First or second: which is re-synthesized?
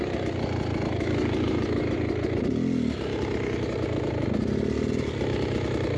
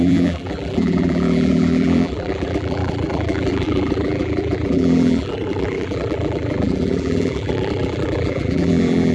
second